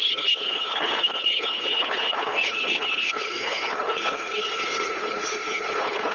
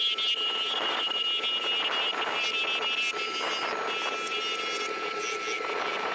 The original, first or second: second